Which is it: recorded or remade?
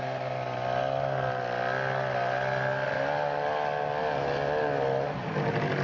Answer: recorded